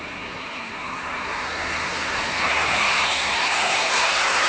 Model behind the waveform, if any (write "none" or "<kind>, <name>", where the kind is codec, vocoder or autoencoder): codec, SNAC